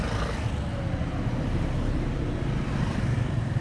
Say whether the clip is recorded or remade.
recorded